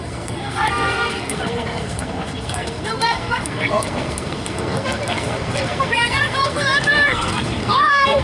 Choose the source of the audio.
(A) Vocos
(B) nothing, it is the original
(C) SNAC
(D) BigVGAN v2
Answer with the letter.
C